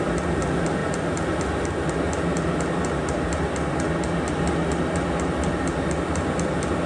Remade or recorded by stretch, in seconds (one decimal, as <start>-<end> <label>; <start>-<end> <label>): 0.0-6.9 recorded